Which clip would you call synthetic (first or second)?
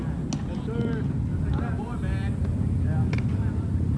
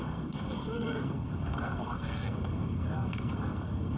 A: second